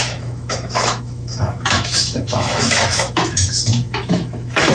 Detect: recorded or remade remade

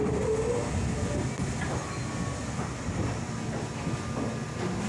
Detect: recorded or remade recorded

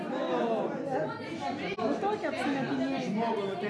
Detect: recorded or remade recorded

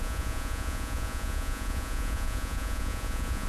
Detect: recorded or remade remade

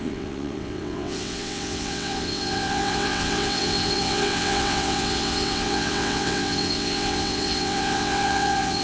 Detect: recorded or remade remade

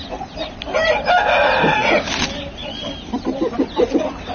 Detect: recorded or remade recorded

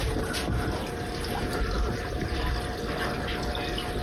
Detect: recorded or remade recorded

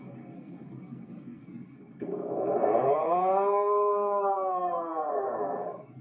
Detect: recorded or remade remade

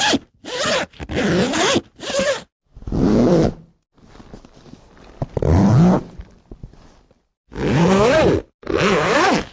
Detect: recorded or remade recorded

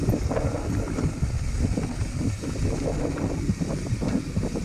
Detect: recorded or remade recorded